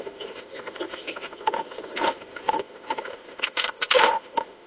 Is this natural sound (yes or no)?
no